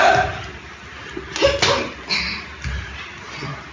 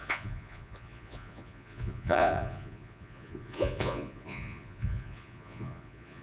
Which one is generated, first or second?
second